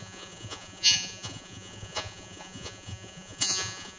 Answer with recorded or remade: remade